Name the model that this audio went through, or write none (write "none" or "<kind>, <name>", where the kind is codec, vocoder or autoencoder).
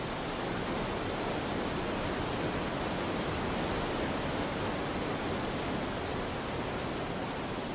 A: none